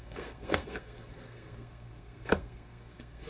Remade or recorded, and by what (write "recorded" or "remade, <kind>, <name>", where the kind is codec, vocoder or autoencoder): remade, codec, SNAC